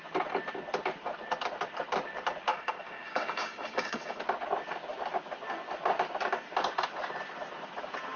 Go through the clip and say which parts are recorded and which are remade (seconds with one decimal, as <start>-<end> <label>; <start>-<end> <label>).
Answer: 0.0-2.5 recorded; 2.5-4.2 remade; 4.2-8.2 recorded